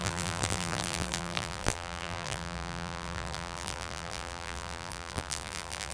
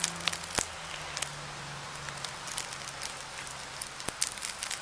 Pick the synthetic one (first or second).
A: first